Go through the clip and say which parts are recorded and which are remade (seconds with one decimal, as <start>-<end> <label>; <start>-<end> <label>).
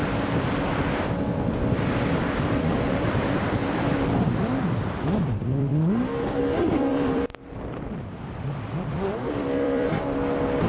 0.0-2.2 recorded; 2.2-5.7 remade; 5.7-6.4 recorded; 6.4-10.7 remade